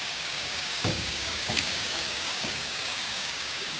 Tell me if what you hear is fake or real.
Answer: fake